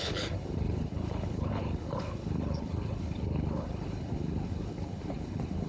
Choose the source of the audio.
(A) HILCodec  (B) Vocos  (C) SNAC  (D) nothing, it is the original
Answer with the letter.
A